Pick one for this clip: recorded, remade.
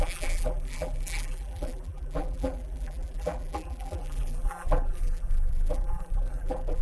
remade